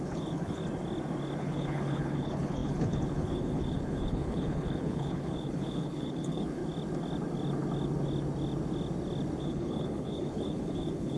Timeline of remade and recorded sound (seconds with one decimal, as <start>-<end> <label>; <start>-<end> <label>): 0.0-0.6 remade; 0.6-1.4 recorded; 1.4-6.6 remade; 6.6-9.4 recorded; 9.4-11.2 remade